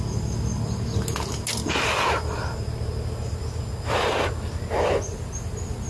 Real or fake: real